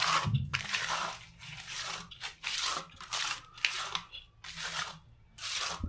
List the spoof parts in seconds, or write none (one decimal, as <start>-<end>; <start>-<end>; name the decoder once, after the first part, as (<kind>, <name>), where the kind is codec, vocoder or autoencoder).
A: none